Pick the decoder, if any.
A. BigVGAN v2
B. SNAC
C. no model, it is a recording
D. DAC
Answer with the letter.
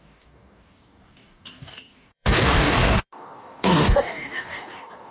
D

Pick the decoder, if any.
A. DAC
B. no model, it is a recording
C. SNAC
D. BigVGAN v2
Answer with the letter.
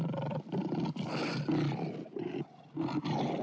B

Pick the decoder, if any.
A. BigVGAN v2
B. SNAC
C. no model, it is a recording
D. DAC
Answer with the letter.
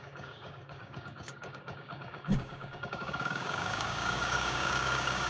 D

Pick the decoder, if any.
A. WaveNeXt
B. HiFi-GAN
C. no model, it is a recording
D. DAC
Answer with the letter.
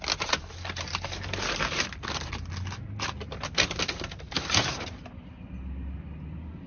C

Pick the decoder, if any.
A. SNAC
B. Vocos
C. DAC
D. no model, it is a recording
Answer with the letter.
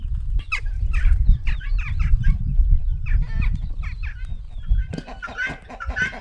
D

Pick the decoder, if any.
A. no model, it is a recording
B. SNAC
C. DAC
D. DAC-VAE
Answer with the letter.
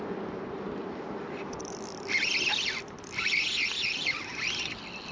A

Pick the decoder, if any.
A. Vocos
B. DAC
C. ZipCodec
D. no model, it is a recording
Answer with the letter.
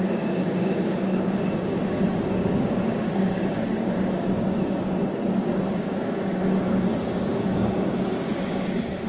B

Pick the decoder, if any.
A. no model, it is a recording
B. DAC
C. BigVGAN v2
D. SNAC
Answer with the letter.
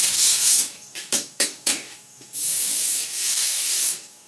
B